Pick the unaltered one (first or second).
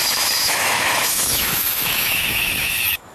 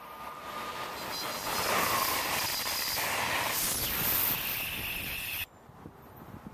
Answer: second